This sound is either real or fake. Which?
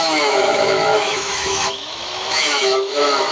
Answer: fake